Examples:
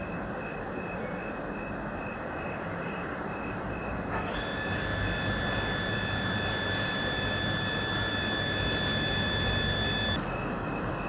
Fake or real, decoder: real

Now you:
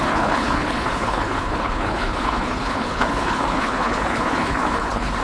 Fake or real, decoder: fake, codec, HILCodec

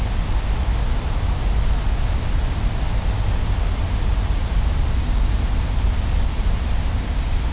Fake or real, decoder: real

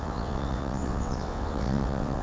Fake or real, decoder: fake, vocoder, WaveNeXt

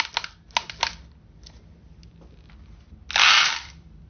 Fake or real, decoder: real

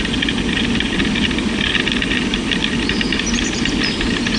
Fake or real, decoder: real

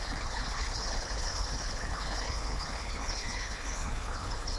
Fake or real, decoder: fake, codec, HILCodec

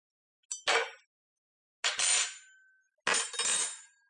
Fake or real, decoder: real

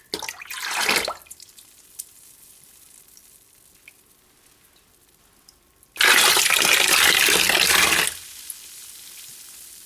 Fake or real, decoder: real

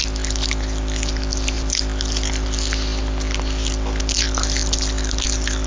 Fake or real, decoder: real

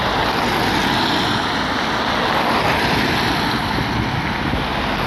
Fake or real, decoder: real